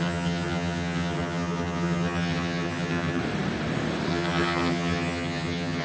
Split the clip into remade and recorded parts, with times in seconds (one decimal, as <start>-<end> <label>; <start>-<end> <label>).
0.0-3.2 remade; 3.2-4.1 recorded; 4.1-5.8 remade